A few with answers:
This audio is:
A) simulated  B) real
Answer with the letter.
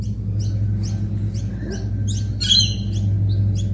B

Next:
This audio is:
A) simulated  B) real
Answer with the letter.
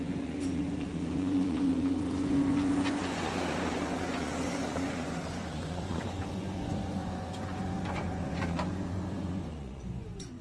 A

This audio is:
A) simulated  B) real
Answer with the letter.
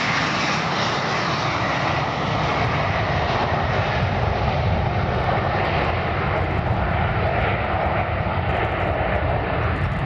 B